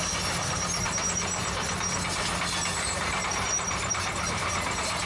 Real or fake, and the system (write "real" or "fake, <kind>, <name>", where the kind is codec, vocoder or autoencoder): real